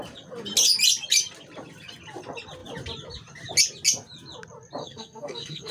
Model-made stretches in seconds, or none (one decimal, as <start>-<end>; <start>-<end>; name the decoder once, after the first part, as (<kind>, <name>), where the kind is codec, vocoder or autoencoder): 4.8-5.7 (codec, SNAC)